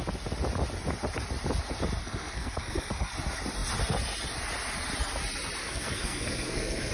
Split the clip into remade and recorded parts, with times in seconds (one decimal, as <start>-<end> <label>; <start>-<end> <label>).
0.0-2.0 recorded; 2.0-3.1 remade; 3.1-5.6 recorded; 5.6-6.9 remade